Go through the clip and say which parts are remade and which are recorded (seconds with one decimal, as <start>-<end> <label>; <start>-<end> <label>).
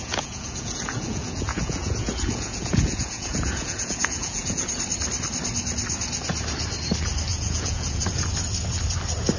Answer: 0.0-4.7 remade; 4.7-7.3 recorded; 7.3-8.0 remade; 8.0-9.4 recorded